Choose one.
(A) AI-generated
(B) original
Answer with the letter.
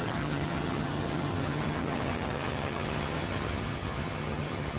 A